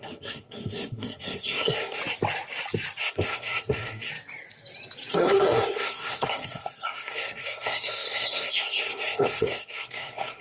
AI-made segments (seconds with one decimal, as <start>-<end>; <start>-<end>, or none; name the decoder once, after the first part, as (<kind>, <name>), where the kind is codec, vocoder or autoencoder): 0.0-2.0 (codec, SNAC); 3.0-4.1; 5.1-10.4